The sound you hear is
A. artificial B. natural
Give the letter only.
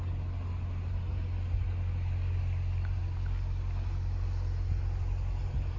B